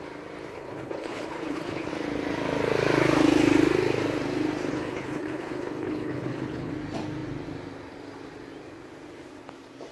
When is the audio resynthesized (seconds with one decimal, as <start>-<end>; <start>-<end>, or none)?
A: 0.5-1.9; 4.7-6.7